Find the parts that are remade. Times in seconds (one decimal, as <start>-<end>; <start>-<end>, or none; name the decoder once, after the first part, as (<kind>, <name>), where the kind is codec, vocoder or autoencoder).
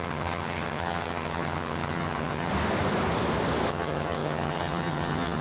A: 0.0-2.5 (vocoder, HiFi-GAN); 3.7-5.4